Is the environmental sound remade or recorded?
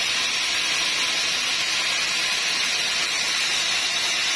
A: recorded